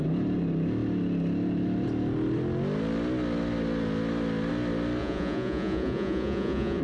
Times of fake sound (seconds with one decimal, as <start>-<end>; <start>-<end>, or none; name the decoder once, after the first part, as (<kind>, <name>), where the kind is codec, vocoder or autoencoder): 5.0-6.8 (vocoder, Vocos)